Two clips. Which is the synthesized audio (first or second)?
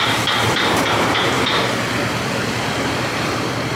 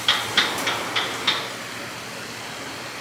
first